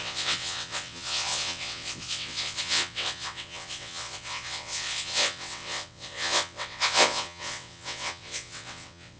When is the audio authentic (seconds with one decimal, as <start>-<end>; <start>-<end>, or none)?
none